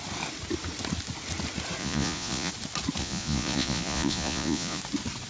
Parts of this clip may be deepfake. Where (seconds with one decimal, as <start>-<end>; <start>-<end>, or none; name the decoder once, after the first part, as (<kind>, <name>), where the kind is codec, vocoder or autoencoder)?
1.8-2.5 (vocoder, Vocos); 3.0-4.8

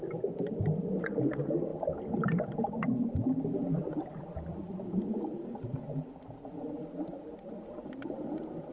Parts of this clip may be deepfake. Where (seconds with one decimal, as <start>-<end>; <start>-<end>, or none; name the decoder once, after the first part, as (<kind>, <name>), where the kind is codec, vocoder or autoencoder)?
1.7-3.0 (vocoder, BigVGAN v2); 3.6-6.8